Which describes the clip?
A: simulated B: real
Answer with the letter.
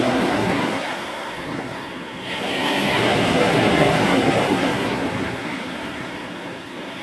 A